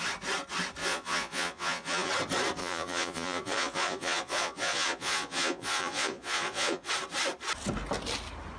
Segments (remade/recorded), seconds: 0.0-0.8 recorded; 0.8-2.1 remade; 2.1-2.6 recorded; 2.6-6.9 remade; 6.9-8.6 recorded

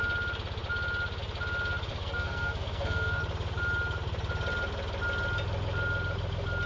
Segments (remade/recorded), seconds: 0.0-1.9 recorded; 1.9-3.2 remade; 3.2-6.7 recorded

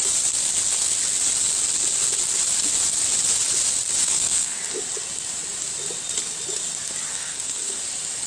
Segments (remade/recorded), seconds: 0.0-4.0 recorded; 4.0-4.6 remade; 4.6-7.1 recorded; 7.1-7.8 remade; 7.8-8.3 recorded

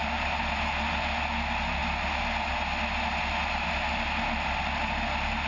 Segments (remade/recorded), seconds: 0.0-5.5 recorded

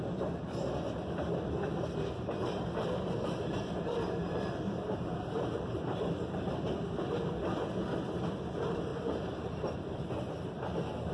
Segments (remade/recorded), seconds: 0.0-2.4 recorded; 2.4-6.6 remade; 6.6-8.9 recorded; 8.9-11.1 remade

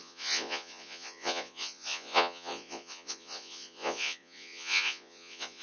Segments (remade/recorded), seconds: 0.0-5.6 remade

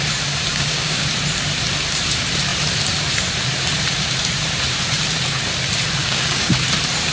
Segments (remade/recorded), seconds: 0.0-0.5 recorded; 0.5-1.1 remade; 1.1-6.0 recorded; 6.0-6.6 remade; 6.6-7.1 recorded

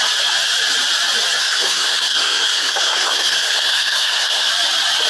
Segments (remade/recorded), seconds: 0.0-1.4 recorded; 1.4-4.5 remade; 4.5-5.1 recorded